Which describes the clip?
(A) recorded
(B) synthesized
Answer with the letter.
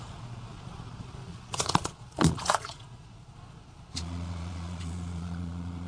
B